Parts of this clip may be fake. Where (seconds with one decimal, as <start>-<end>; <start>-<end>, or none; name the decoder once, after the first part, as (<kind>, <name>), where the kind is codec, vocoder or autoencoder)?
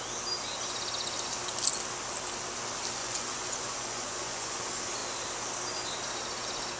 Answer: 3.0-4.6 (vocoder, Vocos)